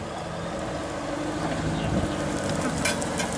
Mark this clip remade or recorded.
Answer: recorded